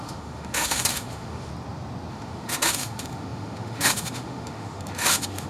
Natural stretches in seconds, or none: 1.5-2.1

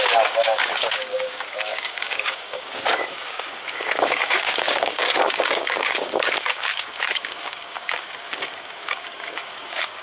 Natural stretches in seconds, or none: none

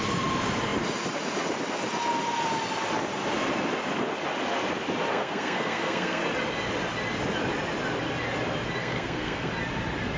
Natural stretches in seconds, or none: 0.0-5.1; 6.2-8.8; 9.5-10.2

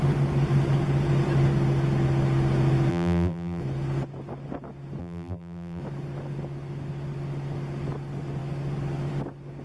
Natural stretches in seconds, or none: 0.0-2.9; 3.6-5.0; 5.8-9.6